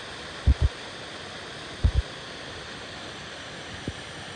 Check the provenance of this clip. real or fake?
real